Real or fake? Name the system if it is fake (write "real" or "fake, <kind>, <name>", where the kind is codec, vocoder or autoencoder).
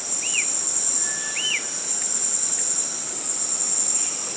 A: real